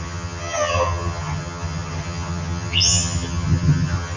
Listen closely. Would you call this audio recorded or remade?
remade